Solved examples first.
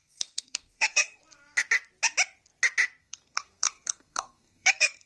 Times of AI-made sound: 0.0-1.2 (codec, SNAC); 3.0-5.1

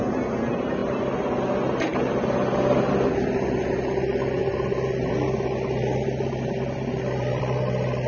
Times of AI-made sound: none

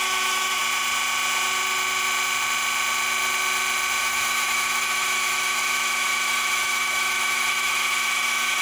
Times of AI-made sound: 0.0-0.6 (autoencoder, DAC-VAE); 4.0-8.6

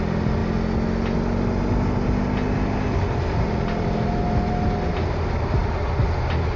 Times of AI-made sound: none